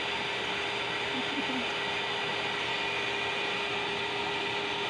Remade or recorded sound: recorded